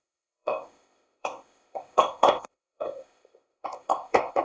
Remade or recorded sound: remade